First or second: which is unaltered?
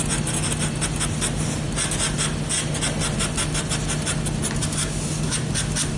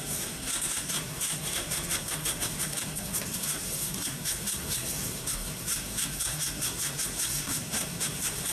first